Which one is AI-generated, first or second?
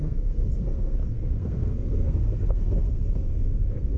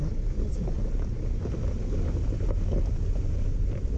first